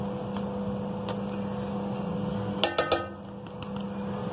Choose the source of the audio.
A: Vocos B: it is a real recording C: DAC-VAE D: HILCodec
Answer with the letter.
B